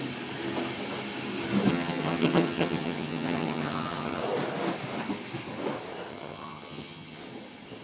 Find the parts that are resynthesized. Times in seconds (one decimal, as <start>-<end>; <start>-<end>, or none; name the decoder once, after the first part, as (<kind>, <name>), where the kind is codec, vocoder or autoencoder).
1.7-4.2 (vocoder, HiFi-GAN); 6.1-7.2